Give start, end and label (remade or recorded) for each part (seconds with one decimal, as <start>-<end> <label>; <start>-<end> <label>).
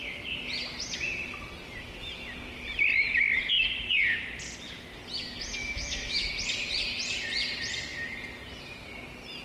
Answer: 0.0-5.6 recorded; 5.6-6.3 remade; 6.3-9.4 recorded